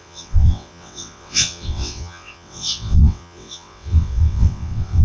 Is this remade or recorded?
remade